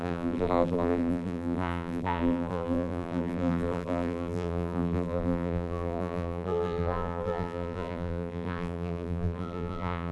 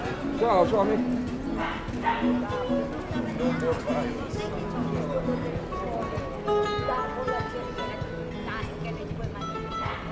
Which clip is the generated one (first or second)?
first